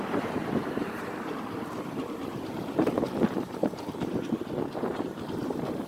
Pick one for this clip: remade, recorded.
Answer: remade